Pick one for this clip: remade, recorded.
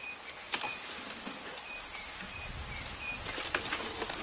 recorded